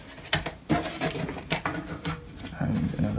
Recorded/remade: recorded